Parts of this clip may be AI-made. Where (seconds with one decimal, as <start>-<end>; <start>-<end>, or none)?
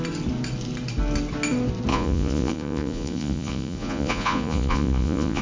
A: 1.9-5.4